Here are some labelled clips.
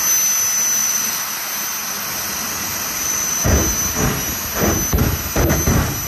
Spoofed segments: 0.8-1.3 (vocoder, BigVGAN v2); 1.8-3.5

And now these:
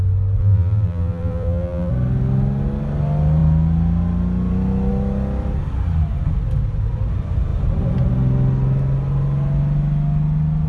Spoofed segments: 0.4-1.9 (vocoder, BigVGAN v2)

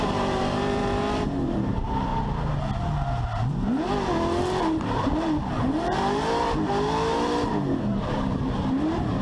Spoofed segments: 0.0-2.1 (vocoder, BigVGAN v2); 4.6-9.2